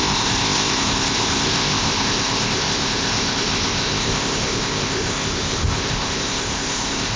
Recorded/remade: remade